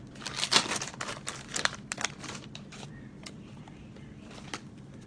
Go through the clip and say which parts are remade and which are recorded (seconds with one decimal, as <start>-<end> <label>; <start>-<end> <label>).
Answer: 0.0-5.1 recorded